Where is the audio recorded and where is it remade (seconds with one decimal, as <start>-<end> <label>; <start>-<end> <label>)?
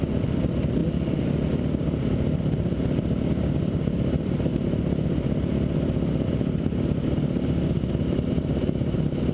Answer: 0.0-0.8 recorded; 0.8-1.7 remade; 1.7-9.3 recorded